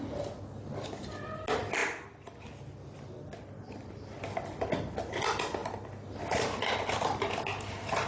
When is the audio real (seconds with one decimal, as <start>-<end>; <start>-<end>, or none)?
0.0-8.1